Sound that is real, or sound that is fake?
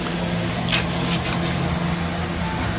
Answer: real